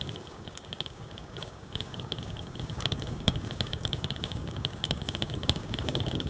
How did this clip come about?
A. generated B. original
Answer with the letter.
A